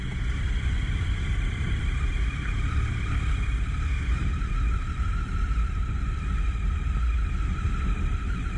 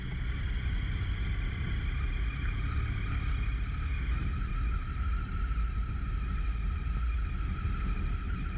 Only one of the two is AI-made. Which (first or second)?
first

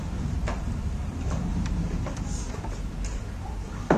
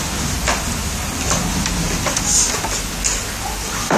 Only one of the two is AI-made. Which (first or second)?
first